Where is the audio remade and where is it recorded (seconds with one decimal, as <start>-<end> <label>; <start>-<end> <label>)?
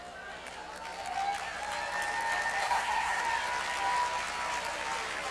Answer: 0.0-2.6 recorded; 2.6-3.2 remade; 3.2-5.3 recorded